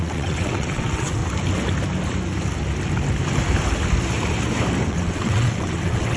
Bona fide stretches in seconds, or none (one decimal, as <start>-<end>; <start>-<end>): 1.2-4.9